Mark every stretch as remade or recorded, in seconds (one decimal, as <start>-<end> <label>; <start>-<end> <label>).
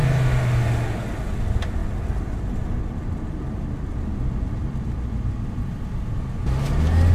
0.0-7.1 recorded